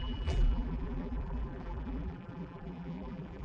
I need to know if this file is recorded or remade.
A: remade